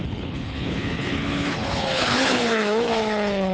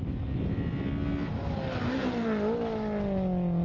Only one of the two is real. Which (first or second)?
second